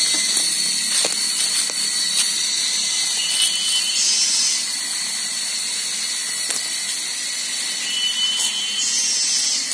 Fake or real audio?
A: real